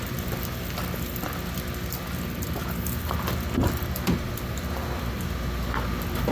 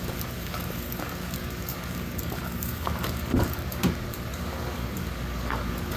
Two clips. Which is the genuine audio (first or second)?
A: first